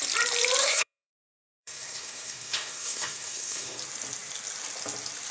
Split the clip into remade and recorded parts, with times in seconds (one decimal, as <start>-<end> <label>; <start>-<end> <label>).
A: 0.0-0.6 recorded; 0.6-3.8 remade; 3.8-5.3 recorded